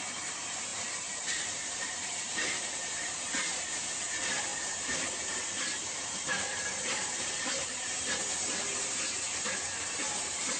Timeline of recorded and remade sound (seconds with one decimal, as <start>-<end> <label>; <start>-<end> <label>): 0.0-0.7 recorded; 0.7-3.2 remade; 3.2-4.5 recorded; 4.5-8.1 remade; 8.1-10.6 recorded

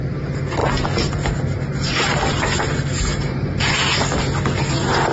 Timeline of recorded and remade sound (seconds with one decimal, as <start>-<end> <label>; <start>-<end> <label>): 0.0-0.6 recorded; 0.6-3.7 remade; 3.7-5.1 recorded

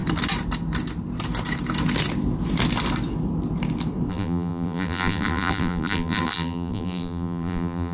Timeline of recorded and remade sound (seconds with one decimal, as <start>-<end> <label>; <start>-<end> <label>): 0.0-4.1 recorded; 4.1-7.9 remade

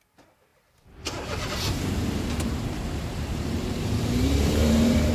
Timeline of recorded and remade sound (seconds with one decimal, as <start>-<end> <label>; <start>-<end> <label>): 0.0-0.5 remade; 0.5-1.9 recorded; 1.9-5.1 remade

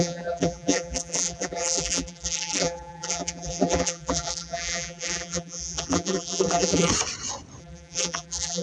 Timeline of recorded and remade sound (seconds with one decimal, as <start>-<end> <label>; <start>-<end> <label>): 0.0-6.9 remade; 6.9-7.6 recorded; 7.6-8.6 remade

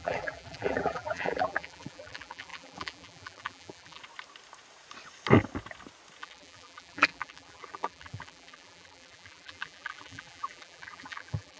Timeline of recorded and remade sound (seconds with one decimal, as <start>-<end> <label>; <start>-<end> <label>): 0.0-4.0 remade; 4.0-6.2 recorded; 6.2-11.6 remade

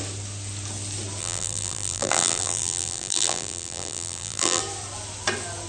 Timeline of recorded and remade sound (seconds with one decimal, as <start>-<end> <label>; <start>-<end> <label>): 0.0-1.2 recorded; 1.2-4.6 remade; 4.6-5.7 recorded